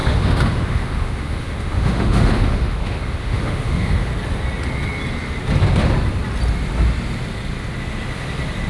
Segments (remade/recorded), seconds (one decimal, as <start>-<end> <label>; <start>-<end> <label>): 0.0-4.1 remade; 4.1-8.7 recorded